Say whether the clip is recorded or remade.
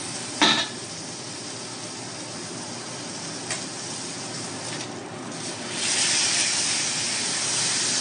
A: recorded